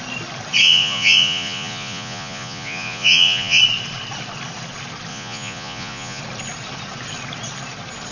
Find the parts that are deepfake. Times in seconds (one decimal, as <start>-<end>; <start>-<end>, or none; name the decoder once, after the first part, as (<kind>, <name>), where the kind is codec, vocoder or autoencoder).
0.6-3.6 (vocoder, Vocos); 5.1-6.2